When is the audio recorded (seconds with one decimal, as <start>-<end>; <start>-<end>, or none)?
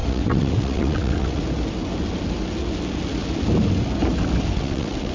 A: 1.4-4.5